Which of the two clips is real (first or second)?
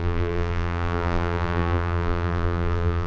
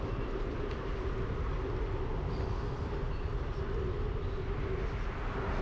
second